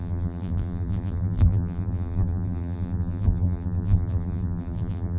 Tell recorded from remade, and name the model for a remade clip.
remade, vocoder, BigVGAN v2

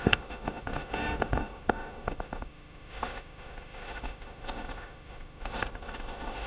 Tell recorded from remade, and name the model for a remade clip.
remade, autoencoder, DAC-VAE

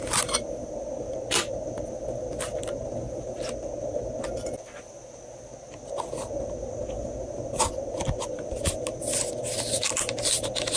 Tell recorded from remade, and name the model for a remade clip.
recorded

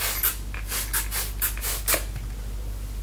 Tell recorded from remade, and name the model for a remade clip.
recorded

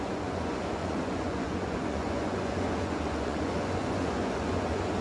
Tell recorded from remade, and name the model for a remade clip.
remade, vocoder, Vocos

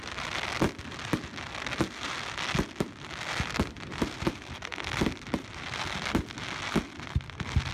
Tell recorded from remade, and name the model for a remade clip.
recorded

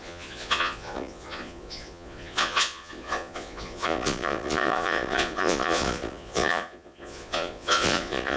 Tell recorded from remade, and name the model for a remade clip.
remade, vocoder, Vocos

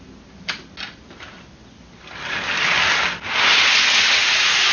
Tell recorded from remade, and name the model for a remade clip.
recorded